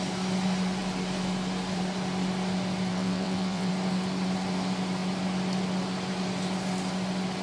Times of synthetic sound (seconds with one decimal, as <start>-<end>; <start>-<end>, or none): 2.9-3.7